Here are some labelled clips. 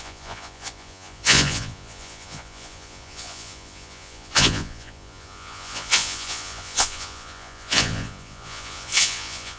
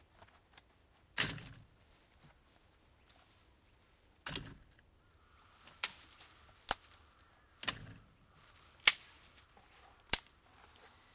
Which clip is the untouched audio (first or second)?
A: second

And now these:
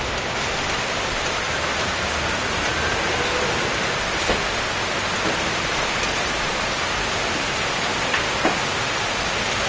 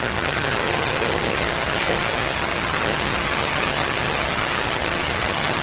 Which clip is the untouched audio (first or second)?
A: first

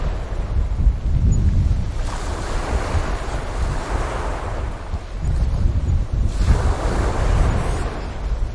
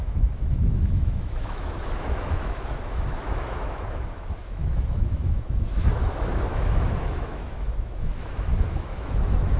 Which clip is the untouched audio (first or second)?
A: first